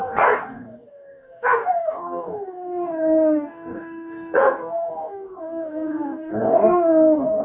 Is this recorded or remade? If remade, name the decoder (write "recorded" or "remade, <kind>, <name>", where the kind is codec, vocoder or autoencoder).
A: remade, codec, DAC